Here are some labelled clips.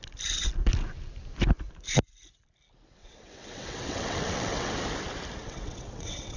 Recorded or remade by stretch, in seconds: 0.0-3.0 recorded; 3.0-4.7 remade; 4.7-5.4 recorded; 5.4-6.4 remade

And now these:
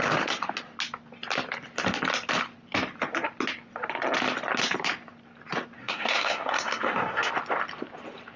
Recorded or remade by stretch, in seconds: 0.0-5.8 recorded; 5.8-7.3 remade; 7.3-8.4 recorded